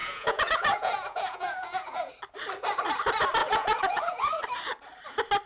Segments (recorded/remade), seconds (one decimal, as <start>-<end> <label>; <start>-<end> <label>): 0.0-2.1 remade; 2.1-3.4 recorded; 3.4-4.4 remade; 4.4-5.5 recorded